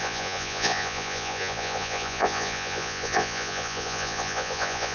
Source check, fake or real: fake